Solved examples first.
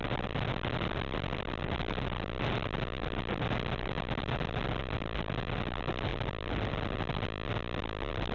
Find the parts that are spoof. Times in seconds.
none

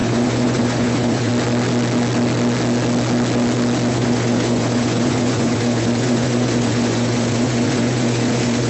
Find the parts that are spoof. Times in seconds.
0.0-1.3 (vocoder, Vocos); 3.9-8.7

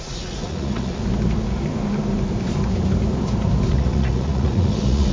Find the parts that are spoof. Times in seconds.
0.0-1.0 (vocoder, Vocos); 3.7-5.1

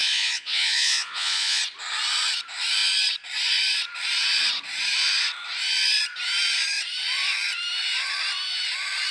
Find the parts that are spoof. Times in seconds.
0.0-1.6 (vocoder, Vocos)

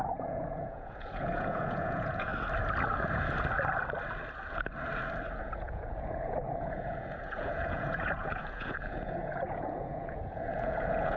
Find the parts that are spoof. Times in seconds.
0.0-2.3 (vocoder, Vocos); 5.4-11.2

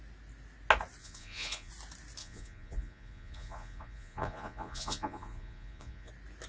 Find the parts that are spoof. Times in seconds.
1.0-1.7 (vocoder, Vocos); 2.2-6.1

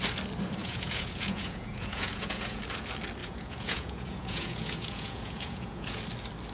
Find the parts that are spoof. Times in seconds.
0.6-2.6 (vocoder, Vocos); 3.2-6.0

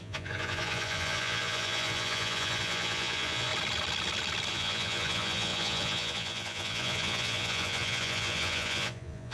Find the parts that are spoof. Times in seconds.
0.0-3.5 (vocoder, Vocos); 4.5-9.3